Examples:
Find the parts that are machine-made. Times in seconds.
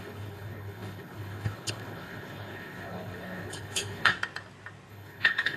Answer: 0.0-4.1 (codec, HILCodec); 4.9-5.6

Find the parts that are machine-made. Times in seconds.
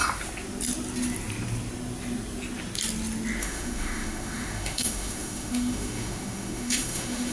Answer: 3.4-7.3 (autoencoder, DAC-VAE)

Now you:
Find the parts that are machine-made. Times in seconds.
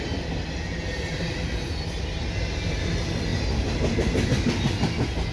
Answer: none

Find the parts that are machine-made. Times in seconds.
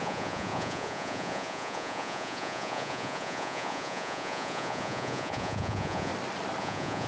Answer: 0.0-6.1 (vocoder, Vocos); 6.6-7.1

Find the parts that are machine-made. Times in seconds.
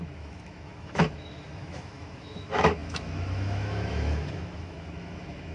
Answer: 0.0-5.5 (autoencoder, DAC-VAE)